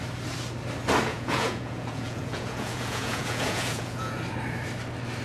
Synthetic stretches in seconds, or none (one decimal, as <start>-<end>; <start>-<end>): 1.1-4.2